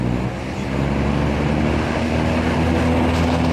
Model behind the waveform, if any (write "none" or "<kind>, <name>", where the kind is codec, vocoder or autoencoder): none